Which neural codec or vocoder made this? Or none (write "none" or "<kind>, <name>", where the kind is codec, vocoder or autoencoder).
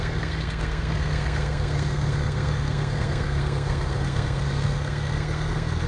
codec, SNAC